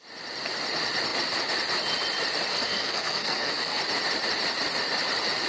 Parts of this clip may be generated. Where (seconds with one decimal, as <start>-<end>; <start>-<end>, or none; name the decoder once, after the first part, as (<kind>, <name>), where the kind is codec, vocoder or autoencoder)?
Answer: 2.5-3.8 (codec, SNAC)